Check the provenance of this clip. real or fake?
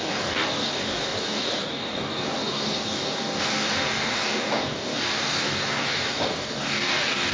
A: fake